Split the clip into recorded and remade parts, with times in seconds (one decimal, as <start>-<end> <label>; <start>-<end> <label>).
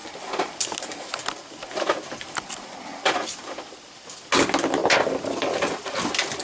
0.0-6.4 recorded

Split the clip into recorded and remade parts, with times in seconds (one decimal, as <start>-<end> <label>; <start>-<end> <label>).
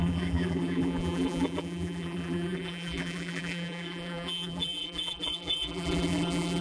0.0-6.6 remade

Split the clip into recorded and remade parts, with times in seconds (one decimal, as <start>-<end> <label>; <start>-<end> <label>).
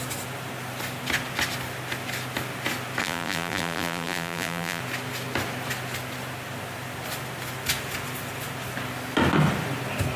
0.0-3.0 recorded; 3.0-4.8 remade; 4.8-10.2 recorded